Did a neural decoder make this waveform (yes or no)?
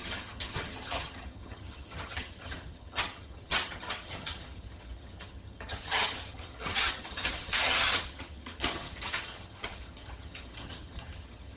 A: yes